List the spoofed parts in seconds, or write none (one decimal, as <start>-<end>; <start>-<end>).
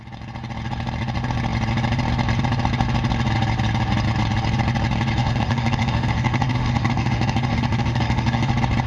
5.2-8.5